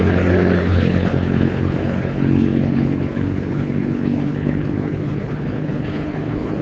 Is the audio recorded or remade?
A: remade